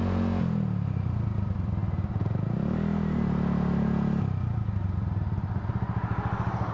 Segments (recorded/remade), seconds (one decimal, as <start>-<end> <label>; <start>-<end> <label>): 0.0-6.7 recorded